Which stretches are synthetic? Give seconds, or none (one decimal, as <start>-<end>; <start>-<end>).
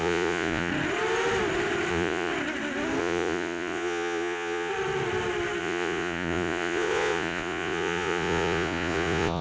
0.0-0.7; 1.9-2.3; 3.0-4.7; 5.6-9.4